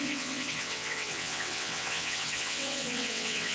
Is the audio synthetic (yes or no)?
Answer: yes